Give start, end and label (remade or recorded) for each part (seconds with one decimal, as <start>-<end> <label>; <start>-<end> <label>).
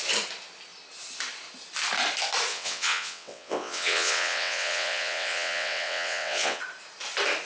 0.0-2.5 recorded; 2.5-6.6 remade; 6.6-7.5 recorded